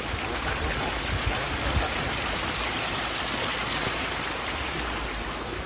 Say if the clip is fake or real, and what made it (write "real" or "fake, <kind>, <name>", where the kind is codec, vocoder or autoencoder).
real